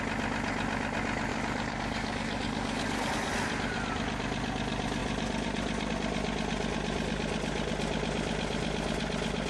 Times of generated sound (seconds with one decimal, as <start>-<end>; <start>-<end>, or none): 1.3-3.1